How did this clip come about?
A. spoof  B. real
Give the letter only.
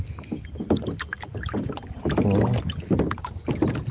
B